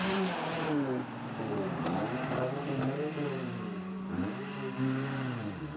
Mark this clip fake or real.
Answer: fake